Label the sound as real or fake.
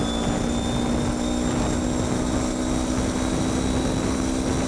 real